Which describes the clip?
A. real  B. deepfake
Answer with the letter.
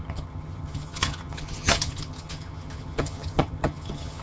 B